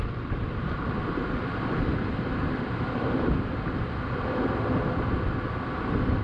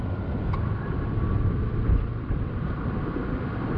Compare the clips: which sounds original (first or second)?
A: second